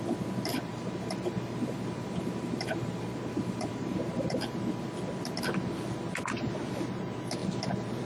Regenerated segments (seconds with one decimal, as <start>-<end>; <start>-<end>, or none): 0.5-4.4